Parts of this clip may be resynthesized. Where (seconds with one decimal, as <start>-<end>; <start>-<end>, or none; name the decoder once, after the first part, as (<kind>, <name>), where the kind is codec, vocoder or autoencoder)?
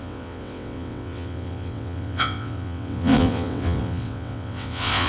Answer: 0.0-5.1 (vocoder, WaveNeXt)